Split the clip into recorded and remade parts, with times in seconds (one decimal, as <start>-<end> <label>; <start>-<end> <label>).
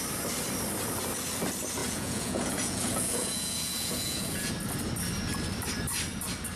0.0-1.8 recorded; 1.8-4.5 remade; 4.5-6.6 recorded